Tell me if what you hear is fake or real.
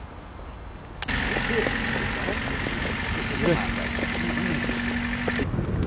real